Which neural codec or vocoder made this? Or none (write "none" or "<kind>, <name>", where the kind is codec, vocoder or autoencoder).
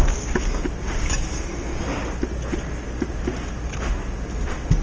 none